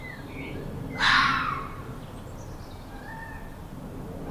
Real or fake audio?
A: real